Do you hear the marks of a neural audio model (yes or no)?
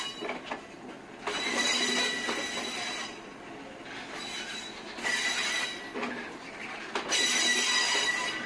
no